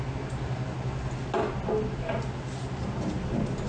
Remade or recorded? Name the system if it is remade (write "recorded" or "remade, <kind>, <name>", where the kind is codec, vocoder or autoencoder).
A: recorded